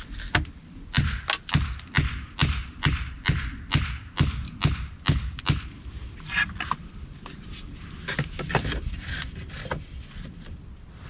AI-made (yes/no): no